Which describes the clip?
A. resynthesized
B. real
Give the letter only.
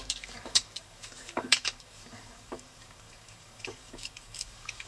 A